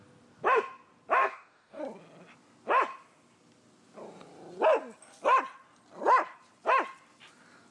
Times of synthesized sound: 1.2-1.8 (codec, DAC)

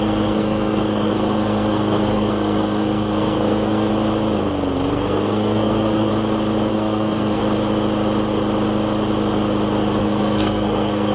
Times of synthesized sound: 0.0-3.9 (codec, SNAC); 4.9-6.1; 6.7-7.4; 10.0-11.1

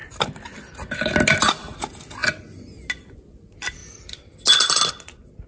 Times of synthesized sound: none

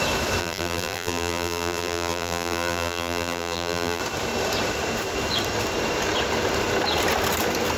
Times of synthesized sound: 0.4-4.0 (vocoder, BigVGAN v2)

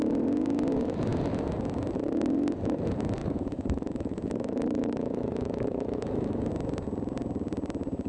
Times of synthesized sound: 3.2-6.5 (autoencoder, DAC-VAE)

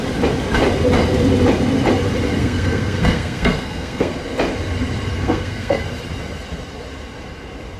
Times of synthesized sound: 2.4-4.1 (codec, SNAC); 5.1-5.8

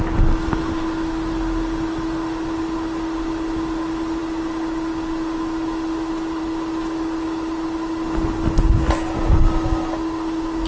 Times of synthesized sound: none